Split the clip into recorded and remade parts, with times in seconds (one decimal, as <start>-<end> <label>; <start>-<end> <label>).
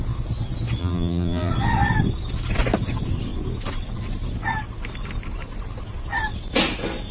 0.0-0.8 recorded; 0.8-1.5 remade; 1.5-7.1 recorded